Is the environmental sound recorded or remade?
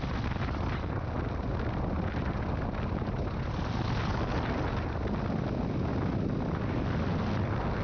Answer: recorded